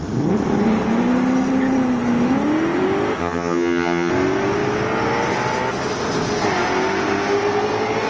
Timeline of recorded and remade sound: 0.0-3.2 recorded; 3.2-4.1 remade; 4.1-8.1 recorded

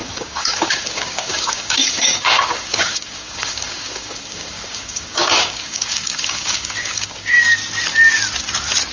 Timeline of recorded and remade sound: 0.0-7.6 remade; 7.6-8.9 recorded

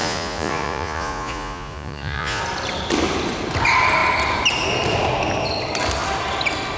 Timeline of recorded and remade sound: 0.0-2.4 remade; 2.4-6.8 recorded